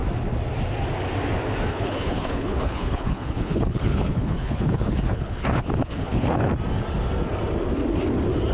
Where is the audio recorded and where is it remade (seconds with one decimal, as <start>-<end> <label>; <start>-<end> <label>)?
0.0-1.7 recorded; 1.7-6.5 remade; 6.5-8.5 recorded